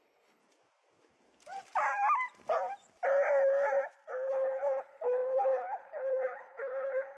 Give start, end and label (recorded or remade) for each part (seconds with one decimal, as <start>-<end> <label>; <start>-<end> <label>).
0.0-0.4 remade; 0.4-4.3 recorded; 4.3-7.2 remade